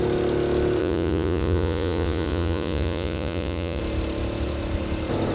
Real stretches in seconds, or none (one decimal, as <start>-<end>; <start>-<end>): 0.0-0.8; 3.8-5.3